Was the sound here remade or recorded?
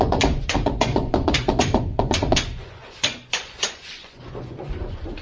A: remade